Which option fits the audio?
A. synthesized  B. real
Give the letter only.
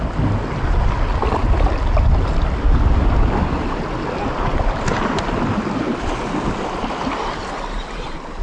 B